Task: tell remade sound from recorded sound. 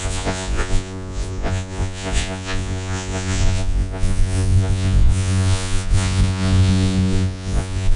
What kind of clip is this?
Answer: remade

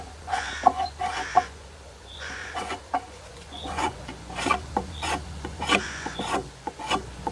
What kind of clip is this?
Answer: remade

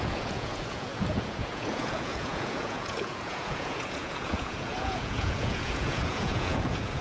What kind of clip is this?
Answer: remade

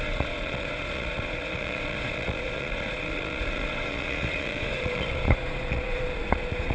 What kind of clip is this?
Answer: remade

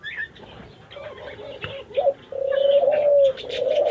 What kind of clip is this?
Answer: recorded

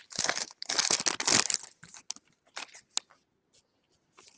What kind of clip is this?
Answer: recorded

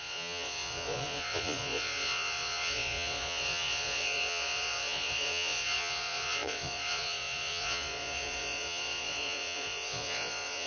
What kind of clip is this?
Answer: remade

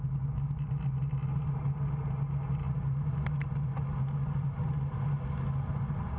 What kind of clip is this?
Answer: recorded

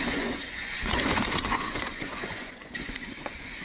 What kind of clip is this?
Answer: remade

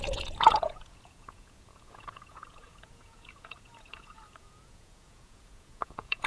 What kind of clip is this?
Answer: remade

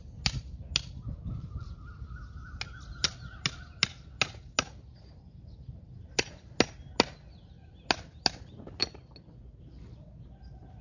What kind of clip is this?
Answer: recorded